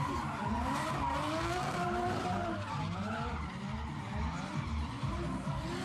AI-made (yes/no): no